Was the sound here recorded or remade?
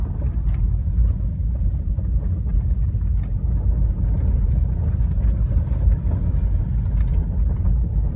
recorded